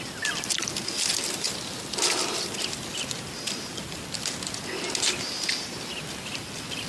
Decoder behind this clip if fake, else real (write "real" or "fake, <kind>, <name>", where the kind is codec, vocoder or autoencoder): real